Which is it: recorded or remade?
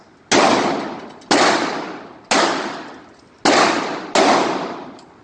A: recorded